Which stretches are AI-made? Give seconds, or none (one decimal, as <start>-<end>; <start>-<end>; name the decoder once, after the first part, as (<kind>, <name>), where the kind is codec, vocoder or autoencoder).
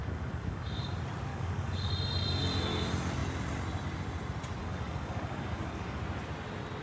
0.0-0.9 (codec, DAC); 1.3-1.9; 4.6-6.0